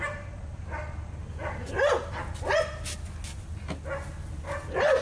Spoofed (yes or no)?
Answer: no